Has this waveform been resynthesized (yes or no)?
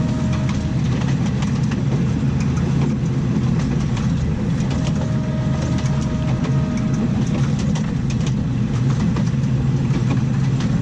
no